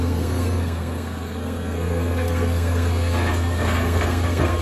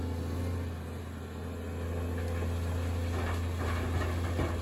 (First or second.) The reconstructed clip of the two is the first